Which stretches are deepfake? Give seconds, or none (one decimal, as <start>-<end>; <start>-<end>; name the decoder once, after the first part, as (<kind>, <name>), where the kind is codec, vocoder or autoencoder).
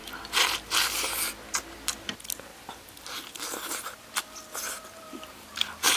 2.5-4.4 (vocoder, BigVGAN v2)